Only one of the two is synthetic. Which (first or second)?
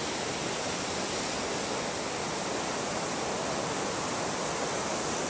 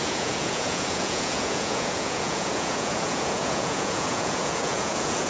second